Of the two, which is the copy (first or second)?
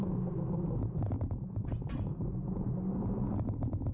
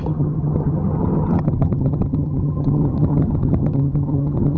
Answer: second